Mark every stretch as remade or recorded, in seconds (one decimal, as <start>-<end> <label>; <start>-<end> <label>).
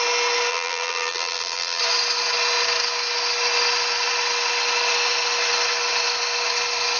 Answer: 0.0-0.5 recorded; 0.5-1.8 remade; 1.8-7.0 recorded